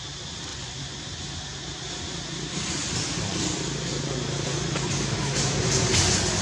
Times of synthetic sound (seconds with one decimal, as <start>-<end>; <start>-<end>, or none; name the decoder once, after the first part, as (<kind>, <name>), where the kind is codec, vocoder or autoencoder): 0.5-1.0 (vocoder, Vocos)

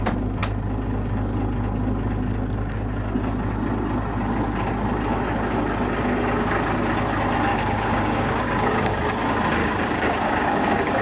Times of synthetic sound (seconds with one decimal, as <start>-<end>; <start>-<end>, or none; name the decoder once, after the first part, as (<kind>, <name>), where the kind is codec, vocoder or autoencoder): 7.5-9.1 (codec, DAC); 9.6-11.0

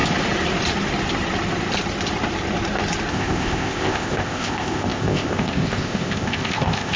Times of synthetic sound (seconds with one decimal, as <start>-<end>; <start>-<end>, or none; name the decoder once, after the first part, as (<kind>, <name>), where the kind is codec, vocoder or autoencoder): 3.1-7.0 (codec, ZipCodec)

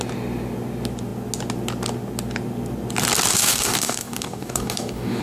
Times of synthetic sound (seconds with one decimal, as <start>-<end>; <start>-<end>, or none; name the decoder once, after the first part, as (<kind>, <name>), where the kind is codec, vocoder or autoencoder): 3.3-5.2 (codec, DAC)

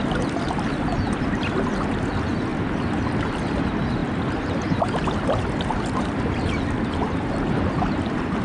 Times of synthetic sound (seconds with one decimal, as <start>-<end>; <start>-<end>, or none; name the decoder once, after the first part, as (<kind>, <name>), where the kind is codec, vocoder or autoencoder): none